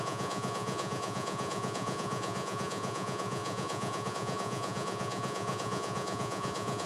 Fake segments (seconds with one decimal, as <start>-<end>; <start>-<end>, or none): 0.0-6.9